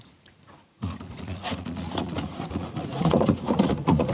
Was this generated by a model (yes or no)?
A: yes